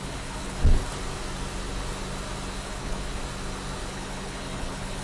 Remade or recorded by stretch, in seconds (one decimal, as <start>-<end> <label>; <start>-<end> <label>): 0.0-0.6 remade; 0.6-2.6 recorded; 2.6-3.2 remade; 3.2-3.9 recorded; 3.9-5.0 remade

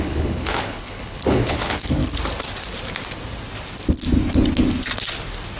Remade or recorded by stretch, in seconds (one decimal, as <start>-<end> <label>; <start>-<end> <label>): 0.0-2.0 remade; 2.0-5.6 recorded

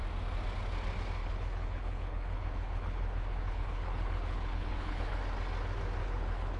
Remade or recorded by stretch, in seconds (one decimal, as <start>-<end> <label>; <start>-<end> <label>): 0.0-1.2 recorded; 1.2-5.2 remade; 5.2-6.0 recorded; 6.0-6.6 remade

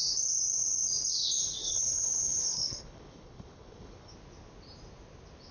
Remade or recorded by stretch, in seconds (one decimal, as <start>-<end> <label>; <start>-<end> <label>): 0.0-1.6 recorded; 1.6-4.1 remade; 4.1-5.5 recorded

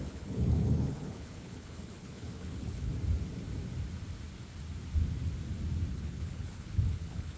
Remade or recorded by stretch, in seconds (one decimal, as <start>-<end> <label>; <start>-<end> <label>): 0.0-2.9 remade; 2.9-5.9 recorded; 5.9-7.4 remade